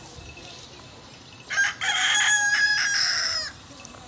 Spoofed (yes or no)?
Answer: no